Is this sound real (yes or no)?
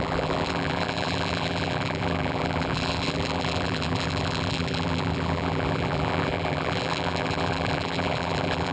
no